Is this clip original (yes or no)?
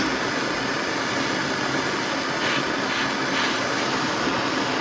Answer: yes